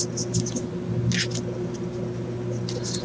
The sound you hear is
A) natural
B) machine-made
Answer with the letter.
A